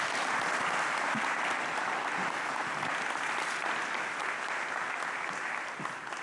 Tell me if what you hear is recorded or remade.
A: recorded